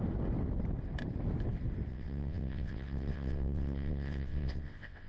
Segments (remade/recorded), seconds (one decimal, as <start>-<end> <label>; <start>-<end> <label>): 0.0-1.9 recorded; 1.9-5.1 remade